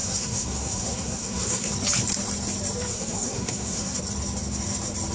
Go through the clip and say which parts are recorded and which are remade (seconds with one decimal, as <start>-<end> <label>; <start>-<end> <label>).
0.0-1.7 remade; 1.7-2.9 recorded; 2.9-4.0 remade; 4.0-5.1 recorded

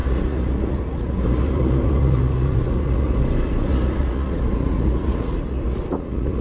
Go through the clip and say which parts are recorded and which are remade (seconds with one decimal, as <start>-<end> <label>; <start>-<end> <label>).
0.0-3.2 remade; 3.2-3.7 recorded; 3.7-6.4 remade

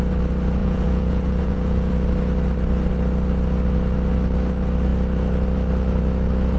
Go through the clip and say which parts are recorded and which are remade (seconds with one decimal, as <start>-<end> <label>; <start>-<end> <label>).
0.0-0.6 recorded; 0.6-1.9 remade; 1.9-6.6 recorded

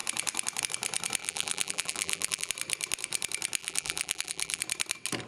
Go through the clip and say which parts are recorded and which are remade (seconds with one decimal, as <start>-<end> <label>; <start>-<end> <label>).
0.0-1.2 recorded; 1.2-2.5 remade; 2.5-3.6 recorded; 3.6-4.6 remade; 4.6-5.3 recorded

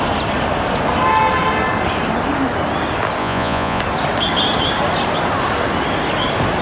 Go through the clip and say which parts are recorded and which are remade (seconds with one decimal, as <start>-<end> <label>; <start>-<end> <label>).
0.0-3.2 recorded; 3.2-3.8 remade; 3.8-6.6 recorded

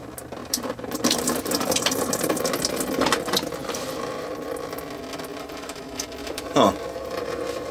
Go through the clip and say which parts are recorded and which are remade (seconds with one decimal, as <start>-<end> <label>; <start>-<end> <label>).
0.0-0.4 recorded; 0.4-2.5 remade; 2.5-3.6 recorded; 3.6-4.3 remade; 4.3-5.3 recorded; 5.3-5.8 remade; 5.8-6.2 recorded; 6.2-7.7 remade

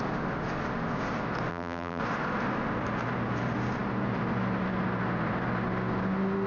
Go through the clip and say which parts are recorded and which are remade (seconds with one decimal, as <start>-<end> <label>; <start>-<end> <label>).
0.0-1.5 recorded; 1.5-2.0 remade; 2.0-6.5 recorded